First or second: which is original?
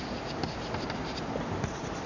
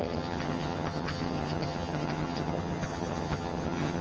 first